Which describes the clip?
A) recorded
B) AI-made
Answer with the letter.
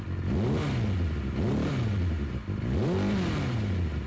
A